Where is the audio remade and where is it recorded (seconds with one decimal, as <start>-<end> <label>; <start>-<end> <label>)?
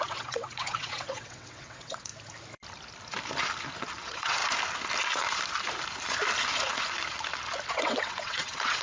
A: 0.0-2.1 remade; 2.1-4.0 recorded; 4.0-4.4 remade; 4.4-7.7 recorded; 7.7-8.8 remade